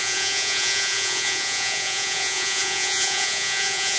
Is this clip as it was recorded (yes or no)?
no